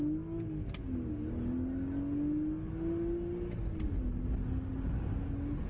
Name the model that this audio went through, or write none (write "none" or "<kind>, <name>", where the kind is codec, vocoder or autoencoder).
none